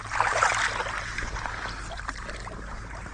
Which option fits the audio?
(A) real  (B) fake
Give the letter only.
A